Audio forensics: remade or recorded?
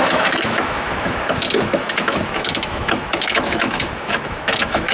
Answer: remade